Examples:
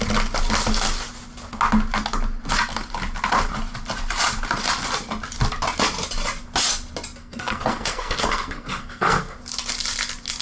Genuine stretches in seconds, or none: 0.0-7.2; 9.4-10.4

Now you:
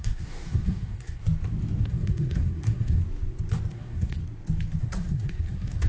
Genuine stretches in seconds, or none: 1.2-1.8; 3.0-3.7; 4.2-4.8

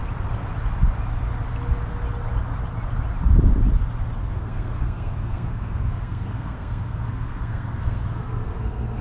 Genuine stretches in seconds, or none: 0.0-4.2

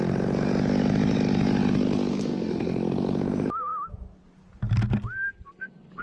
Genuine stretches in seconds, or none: 0.0-2.1; 2.7-6.0

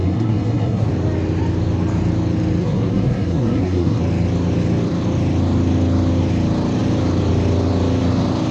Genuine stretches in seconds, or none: 0.9-2.6; 4.0-8.5

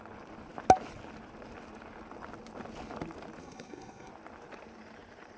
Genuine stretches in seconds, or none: 0.0-3.4; 4.1-5.4

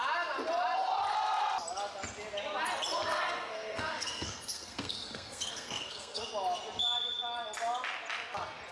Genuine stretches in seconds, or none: 0.0-3.1; 6.3-8.7